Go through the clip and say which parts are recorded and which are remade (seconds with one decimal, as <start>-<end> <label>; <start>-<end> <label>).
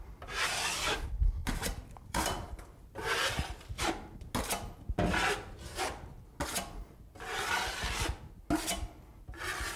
0.0-1.4 recorded; 1.4-3.1 remade; 3.1-7.3 recorded; 7.3-8.2 remade; 8.2-9.8 recorded